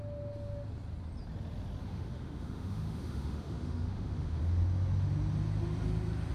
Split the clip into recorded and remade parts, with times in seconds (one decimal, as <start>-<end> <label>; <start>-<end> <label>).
0.0-1.8 recorded; 1.8-4.4 remade; 4.4-6.3 recorded